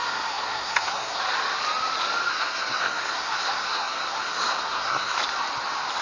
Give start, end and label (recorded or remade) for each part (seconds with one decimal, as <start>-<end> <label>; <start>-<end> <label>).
0.0-1.2 remade; 1.2-2.3 recorded; 2.3-5.2 remade; 5.2-6.0 recorded